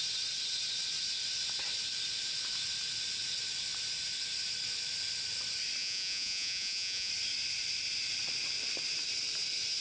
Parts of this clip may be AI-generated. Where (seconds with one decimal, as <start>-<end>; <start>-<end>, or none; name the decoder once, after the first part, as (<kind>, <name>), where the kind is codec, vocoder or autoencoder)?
5.8-7.1 (vocoder, Vocos)

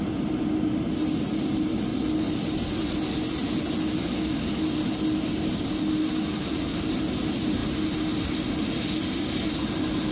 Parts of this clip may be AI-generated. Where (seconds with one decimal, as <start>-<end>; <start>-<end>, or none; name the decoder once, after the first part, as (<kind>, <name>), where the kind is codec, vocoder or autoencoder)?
none